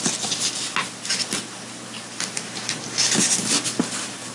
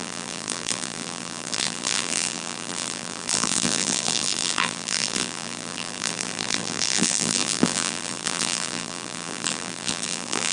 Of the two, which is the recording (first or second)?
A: first